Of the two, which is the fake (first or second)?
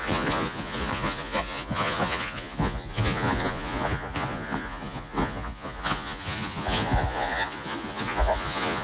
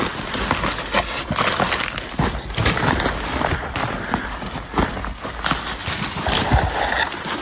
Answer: first